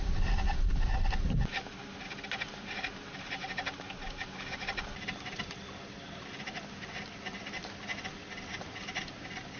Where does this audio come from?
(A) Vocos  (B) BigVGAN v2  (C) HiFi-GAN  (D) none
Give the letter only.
D